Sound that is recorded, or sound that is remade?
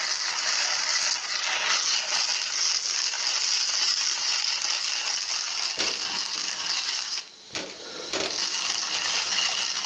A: recorded